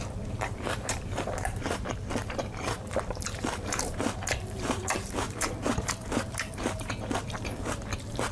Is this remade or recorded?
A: remade